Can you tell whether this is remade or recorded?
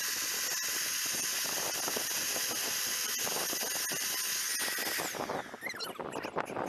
recorded